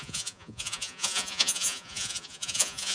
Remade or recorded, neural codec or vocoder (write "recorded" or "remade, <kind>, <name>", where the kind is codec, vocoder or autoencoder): remade, vocoder, Vocos